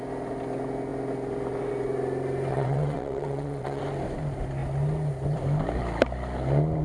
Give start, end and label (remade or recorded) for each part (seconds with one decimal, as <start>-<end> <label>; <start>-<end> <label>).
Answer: 0.0-2.5 recorded; 2.5-3.8 remade; 3.8-6.8 recorded